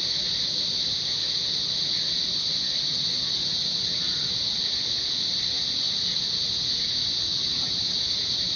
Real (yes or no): yes